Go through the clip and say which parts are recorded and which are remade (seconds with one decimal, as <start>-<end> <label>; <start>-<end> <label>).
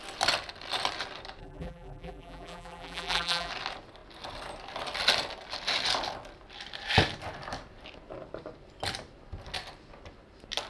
0.0-1.4 recorded; 1.4-3.5 remade; 3.5-10.7 recorded